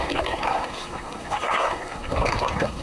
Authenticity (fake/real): fake